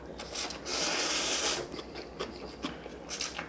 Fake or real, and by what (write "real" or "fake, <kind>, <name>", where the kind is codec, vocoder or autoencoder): real